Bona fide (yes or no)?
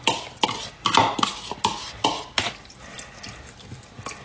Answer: yes